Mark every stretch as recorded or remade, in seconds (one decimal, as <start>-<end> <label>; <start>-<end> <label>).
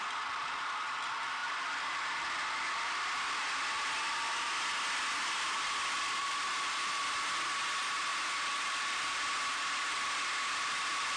0.0-11.2 recorded